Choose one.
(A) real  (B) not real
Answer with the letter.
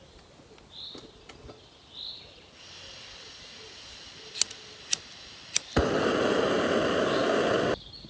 A